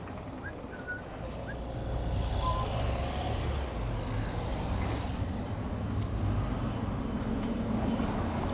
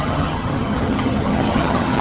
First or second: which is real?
first